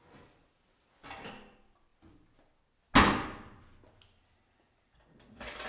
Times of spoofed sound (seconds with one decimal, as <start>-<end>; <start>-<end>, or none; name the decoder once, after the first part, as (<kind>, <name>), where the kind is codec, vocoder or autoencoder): none

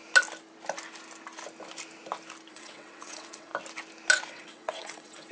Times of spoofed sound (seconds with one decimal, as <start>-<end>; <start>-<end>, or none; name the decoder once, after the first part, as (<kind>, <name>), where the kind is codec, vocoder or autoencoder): 2.5-3.5 (vocoder, WaveNeXt); 4.3-5.3

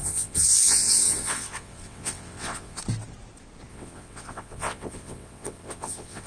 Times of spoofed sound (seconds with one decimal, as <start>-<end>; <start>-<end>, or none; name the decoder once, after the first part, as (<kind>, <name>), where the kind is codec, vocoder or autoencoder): 0.0-2.8 (vocoder, WaveNeXt); 3.7-6.3

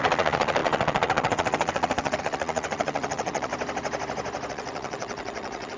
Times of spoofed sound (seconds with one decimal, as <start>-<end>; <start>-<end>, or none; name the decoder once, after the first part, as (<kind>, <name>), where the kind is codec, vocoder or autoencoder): 0.0-3.5 (vocoder, WaveNeXt); 4.5-5.8

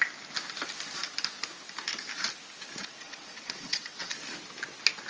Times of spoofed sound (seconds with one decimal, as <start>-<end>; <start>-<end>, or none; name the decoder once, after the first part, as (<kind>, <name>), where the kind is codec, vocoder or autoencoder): 2.8-4.2 (vocoder, WaveNeXt)